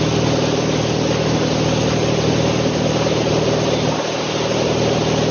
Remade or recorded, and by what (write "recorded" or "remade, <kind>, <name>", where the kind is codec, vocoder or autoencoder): recorded